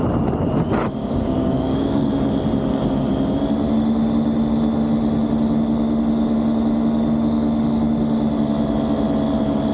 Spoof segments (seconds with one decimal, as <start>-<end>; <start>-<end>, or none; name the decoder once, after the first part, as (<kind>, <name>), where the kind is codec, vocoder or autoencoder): 1.0-2.1 (codec, DAC)